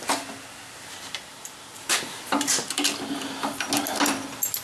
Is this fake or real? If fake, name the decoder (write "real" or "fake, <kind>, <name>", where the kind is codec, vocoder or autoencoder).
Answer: real